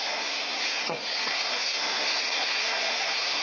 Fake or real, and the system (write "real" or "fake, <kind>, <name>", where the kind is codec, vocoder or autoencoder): fake, codec, SNAC